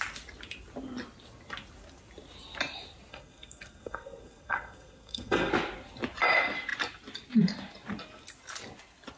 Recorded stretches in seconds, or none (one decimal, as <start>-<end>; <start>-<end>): 0.0-3.1; 5.5-9.2